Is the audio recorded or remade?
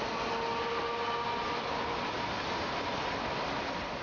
recorded